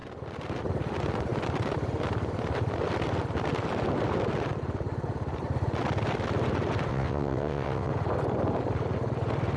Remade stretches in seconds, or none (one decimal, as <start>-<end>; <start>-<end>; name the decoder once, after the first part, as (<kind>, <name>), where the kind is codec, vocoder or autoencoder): 6.9-7.9 (vocoder, WaveNeXt)